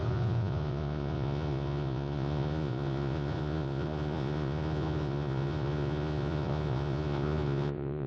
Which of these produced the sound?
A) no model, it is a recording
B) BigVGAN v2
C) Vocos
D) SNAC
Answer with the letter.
C